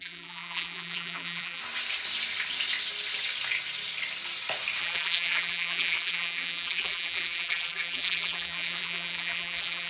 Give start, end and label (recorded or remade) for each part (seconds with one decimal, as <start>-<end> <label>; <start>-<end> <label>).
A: 0.0-1.6 remade; 1.6-4.8 recorded; 4.8-9.9 remade